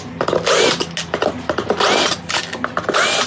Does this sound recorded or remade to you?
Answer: recorded